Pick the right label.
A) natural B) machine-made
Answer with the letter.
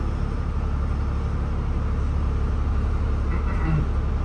A